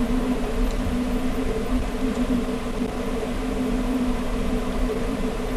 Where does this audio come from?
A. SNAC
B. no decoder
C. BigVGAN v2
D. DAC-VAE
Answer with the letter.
C